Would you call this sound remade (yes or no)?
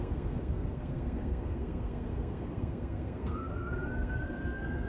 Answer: yes